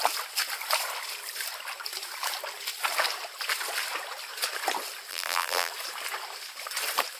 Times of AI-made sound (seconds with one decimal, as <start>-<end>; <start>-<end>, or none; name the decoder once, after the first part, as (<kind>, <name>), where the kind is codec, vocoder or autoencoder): 5.1-5.7 (vocoder, BigVGAN v2)